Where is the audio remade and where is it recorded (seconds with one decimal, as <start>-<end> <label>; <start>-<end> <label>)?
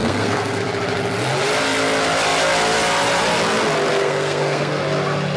0.0-0.6 remade; 0.6-3.9 recorded; 3.9-4.8 remade; 4.8-5.4 recorded